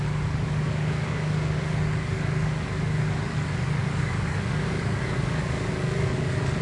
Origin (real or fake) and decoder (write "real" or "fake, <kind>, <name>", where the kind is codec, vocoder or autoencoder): fake, codec, DAC